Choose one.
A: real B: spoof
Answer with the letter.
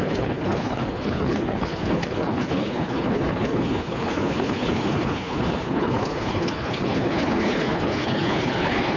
B